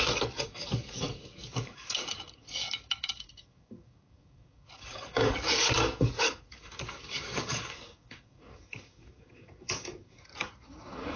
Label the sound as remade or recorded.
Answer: remade